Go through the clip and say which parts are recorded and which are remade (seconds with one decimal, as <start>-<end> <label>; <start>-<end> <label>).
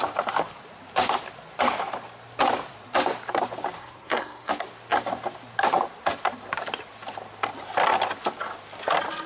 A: 0.0-3.8 recorded; 3.8-4.5 remade; 4.5-9.3 recorded